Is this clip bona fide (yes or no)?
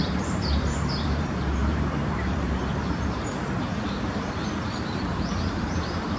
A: no